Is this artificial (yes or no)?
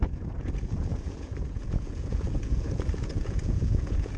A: yes